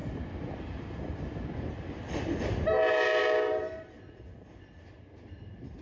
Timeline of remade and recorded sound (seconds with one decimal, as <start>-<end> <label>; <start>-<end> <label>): 0.0-2.4 remade; 2.4-5.8 recorded